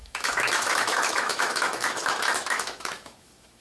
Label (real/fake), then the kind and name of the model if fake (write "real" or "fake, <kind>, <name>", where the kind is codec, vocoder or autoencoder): fake, autoencoder, DAC-VAE